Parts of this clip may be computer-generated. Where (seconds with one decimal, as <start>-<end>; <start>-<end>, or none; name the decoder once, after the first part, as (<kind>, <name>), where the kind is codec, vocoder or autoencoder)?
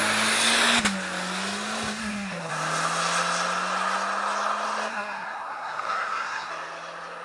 2.0-2.5 (codec, SNAC); 4.9-6.5